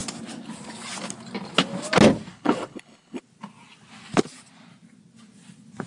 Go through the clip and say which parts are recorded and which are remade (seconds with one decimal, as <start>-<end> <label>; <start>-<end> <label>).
0.0-2.3 recorded; 2.3-3.2 remade; 3.2-5.9 recorded